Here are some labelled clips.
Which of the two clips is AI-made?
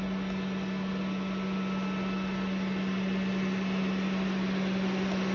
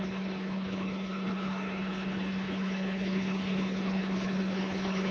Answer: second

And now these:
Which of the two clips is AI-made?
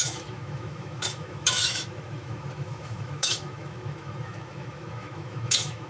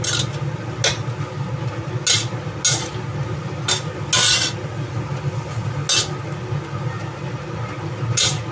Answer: first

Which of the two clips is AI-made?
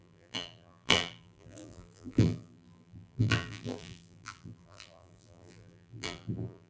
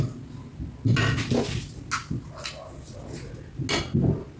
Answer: first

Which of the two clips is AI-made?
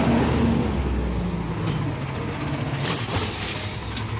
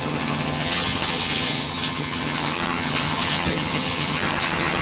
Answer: second